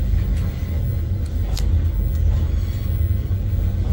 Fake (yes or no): no